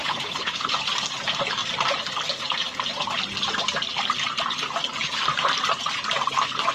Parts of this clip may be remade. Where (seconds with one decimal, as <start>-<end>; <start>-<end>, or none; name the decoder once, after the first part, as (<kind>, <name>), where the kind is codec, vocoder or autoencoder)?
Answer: 0.0-0.7 (vocoder, Vocos)

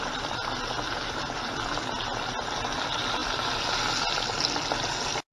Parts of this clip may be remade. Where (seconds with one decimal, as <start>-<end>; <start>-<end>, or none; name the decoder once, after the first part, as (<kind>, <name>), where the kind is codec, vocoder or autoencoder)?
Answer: none

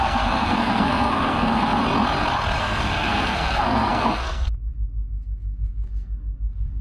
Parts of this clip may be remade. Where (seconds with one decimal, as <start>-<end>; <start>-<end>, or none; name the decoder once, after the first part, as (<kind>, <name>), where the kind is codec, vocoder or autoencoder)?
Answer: 0.0-1.8 (codec, SNAC); 2.6-6.8

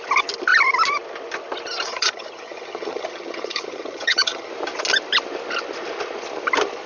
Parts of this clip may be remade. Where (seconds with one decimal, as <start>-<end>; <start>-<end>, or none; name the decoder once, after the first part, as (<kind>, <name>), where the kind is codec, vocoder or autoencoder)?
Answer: 1.9-4.5 (vocoder, HiFi-GAN)

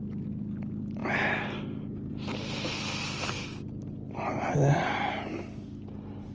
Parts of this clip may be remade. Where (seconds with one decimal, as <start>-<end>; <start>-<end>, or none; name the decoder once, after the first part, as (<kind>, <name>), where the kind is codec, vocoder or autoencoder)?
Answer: none

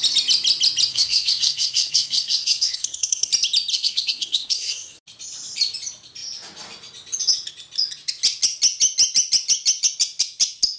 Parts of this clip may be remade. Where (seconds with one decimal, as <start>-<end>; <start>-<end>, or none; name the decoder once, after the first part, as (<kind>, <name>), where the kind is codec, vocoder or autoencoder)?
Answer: 0.9-3.3 (codec, SNAC); 3.7-5.0